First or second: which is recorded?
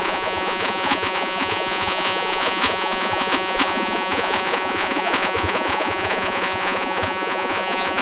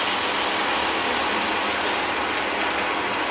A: second